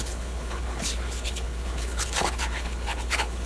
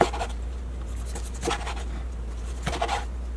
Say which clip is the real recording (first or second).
second